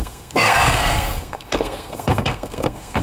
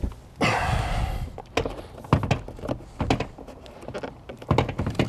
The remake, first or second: first